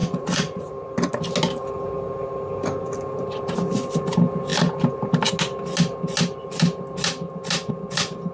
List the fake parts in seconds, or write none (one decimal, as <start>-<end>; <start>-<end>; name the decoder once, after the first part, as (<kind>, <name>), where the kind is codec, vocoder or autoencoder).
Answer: 0.0-0.7 (vocoder, Vocos)